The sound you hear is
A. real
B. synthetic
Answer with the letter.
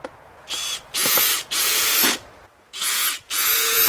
B